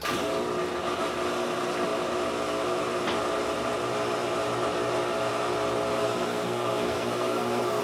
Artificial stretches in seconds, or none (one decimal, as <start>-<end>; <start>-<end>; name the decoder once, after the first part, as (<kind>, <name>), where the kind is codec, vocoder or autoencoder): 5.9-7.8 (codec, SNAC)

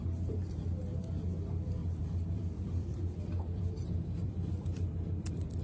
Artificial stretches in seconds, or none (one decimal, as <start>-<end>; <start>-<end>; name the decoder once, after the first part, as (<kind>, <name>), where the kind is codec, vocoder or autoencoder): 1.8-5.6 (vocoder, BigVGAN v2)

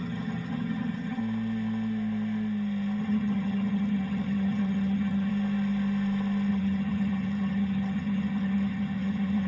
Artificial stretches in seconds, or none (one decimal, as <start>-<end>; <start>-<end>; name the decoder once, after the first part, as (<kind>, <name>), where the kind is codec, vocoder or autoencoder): 0.0-1.2 (vocoder, HiFi-GAN); 3.0-5.3; 6.5-9.5